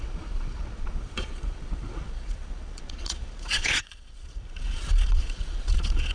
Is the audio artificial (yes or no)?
yes